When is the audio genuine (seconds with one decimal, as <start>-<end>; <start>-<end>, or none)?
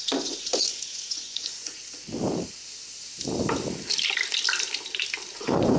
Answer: 1.8-5.3